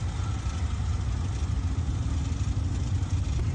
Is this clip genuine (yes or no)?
yes